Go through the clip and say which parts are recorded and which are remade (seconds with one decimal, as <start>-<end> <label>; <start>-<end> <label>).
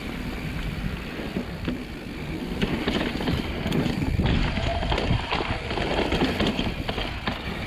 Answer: 0.0-5.9 remade; 5.9-7.7 recorded